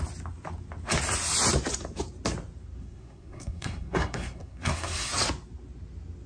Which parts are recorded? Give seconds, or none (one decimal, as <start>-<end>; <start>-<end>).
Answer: 0.0-2.8; 5.1-6.3